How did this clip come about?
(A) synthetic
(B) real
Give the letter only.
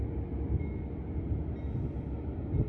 B